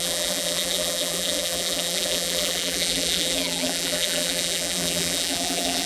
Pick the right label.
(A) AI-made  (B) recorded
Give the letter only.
A